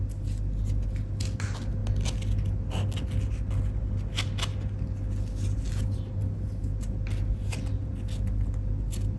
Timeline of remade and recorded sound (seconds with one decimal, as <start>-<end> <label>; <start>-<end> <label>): 0.0-9.2 recorded